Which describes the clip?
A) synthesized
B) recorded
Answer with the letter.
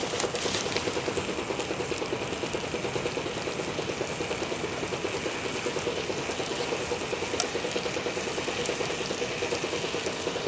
B